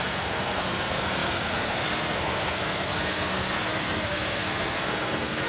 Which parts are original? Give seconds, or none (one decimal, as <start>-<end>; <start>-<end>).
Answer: none